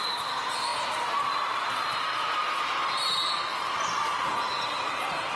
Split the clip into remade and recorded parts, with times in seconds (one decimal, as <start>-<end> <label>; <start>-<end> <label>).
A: 0.0-5.4 recorded